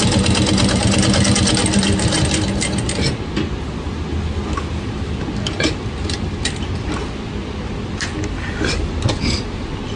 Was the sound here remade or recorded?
recorded